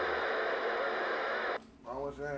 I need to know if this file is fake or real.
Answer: real